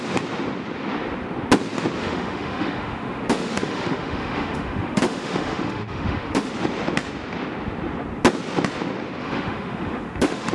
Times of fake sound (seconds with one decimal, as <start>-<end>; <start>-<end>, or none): 2.0-6.5; 9.2-10.5